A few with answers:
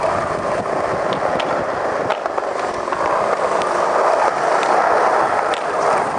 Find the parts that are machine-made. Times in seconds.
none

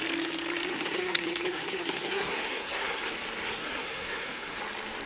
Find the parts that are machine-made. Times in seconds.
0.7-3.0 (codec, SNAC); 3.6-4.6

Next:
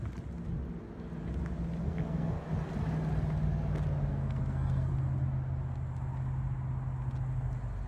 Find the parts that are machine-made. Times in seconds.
1.8-2.4 (codec, SNAC); 4.1-4.9

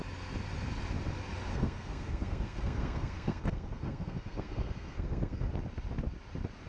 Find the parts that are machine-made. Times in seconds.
1.5-5.5 (codec, SNAC)